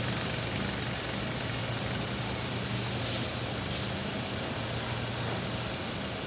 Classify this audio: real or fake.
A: real